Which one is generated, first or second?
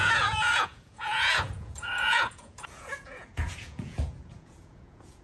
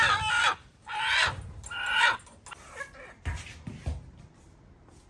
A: first